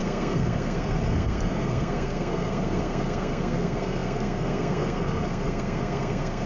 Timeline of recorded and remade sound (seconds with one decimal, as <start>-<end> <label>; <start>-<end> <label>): 0.0-6.5 remade